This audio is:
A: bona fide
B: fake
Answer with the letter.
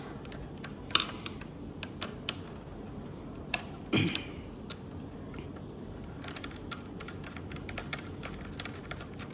A